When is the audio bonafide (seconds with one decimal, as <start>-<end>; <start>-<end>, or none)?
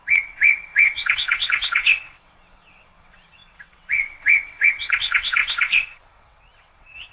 none